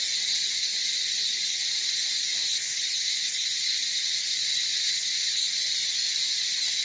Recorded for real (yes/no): yes